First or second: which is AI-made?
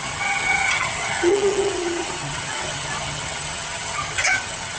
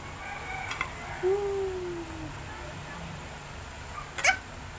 first